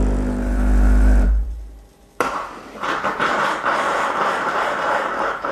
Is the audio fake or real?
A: fake